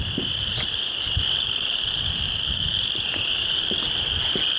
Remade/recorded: recorded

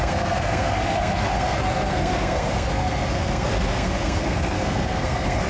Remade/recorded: remade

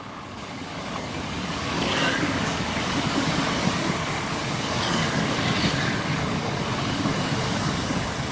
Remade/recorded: remade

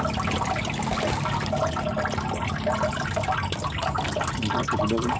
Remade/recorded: recorded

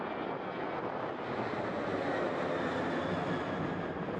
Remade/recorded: recorded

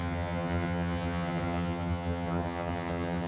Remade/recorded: remade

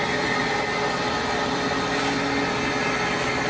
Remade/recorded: recorded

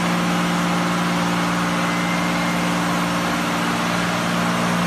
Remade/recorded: recorded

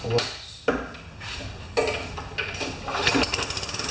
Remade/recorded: recorded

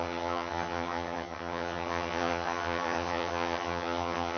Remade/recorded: remade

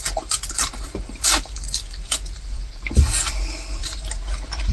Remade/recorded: remade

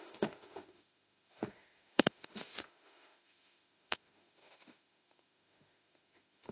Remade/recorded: remade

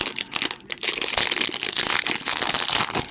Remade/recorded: recorded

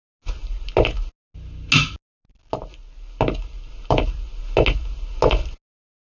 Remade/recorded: recorded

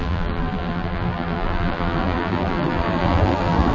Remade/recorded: remade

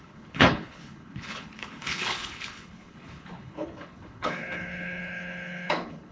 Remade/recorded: remade